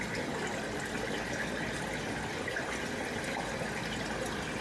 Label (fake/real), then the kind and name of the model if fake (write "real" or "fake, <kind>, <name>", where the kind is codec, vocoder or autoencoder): real